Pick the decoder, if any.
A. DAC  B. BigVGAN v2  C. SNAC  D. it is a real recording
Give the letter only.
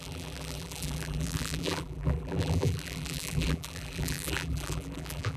B